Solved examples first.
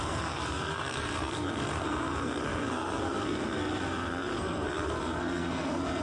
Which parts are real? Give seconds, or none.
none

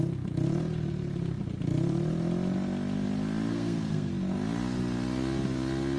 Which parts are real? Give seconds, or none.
0.0-3.5; 4.1-6.0